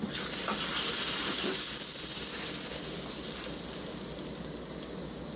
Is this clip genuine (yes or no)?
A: yes